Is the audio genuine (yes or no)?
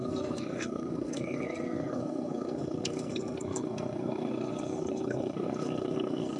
no